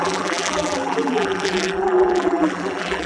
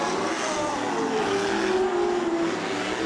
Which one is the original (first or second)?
second